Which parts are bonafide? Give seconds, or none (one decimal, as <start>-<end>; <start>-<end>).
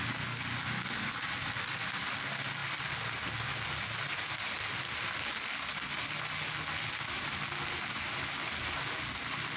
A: 0.0-9.6